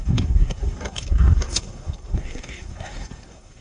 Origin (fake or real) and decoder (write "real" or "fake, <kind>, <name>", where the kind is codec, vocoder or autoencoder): fake, codec, SNAC